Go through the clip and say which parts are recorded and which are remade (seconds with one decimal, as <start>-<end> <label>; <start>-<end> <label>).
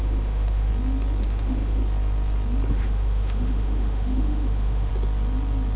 0.0-0.7 remade; 0.7-1.2 recorded; 1.2-1.8 remade; 1.8-2.7 recorded; 2.7-4.9 remade; 4.9-5.8 recorded